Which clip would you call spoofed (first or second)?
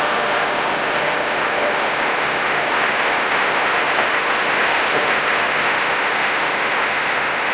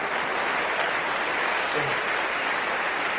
first